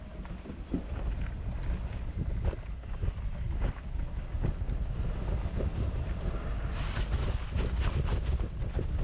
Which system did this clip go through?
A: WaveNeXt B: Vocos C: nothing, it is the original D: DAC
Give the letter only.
C